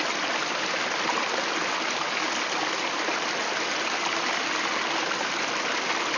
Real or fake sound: real